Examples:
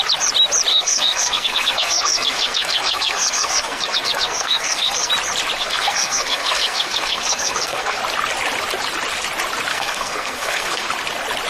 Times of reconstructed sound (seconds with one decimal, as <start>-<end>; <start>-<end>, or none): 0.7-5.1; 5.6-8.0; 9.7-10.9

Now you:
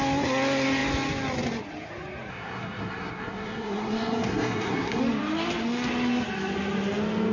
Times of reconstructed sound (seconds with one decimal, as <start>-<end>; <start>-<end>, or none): 2.3-5.0

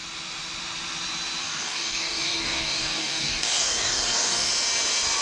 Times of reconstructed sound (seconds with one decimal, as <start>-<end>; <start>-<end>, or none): 1.4-4.5

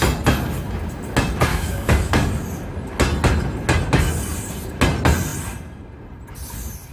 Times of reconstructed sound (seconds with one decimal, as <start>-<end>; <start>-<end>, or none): 1.5-2.3

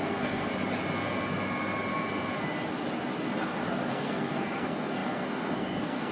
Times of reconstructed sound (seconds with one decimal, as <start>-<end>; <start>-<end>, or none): 0.0-0.5; 3.9-6.1

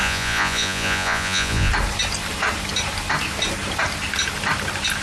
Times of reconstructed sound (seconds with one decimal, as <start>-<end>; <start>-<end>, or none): 0.0-1.7